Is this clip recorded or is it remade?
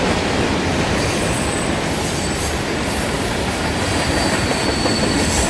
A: remade